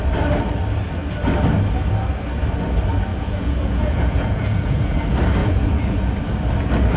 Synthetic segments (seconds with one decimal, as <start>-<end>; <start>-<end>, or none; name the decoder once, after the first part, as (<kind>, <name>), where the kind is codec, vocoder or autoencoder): 3.1-5.0 (vocoder, Vocos); 5.4-6.1